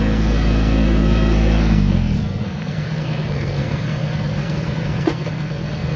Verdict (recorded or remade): remade